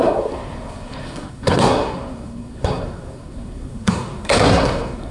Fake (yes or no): yes